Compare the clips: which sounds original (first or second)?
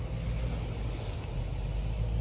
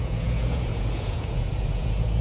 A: first